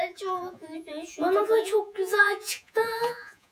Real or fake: fake